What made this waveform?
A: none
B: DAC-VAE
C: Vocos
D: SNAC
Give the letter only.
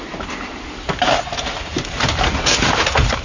A